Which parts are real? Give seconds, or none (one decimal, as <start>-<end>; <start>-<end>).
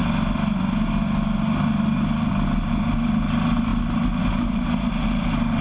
0.0-5.6